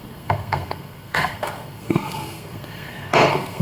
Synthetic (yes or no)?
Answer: yes